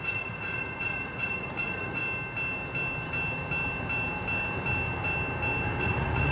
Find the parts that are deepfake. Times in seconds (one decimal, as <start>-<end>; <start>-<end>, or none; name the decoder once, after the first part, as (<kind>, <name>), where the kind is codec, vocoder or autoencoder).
0.0-2.0 (vocoder, Vocos); 5.8-6.3